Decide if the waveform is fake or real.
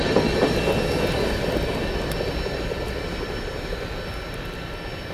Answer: real